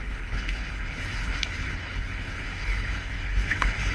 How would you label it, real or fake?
fake